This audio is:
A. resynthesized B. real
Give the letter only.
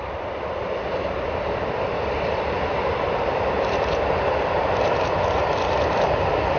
A